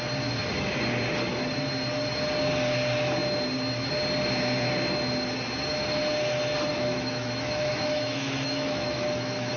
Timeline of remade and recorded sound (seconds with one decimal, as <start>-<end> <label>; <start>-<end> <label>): 0.0-6.7 recorded; 6.7-9.6 remade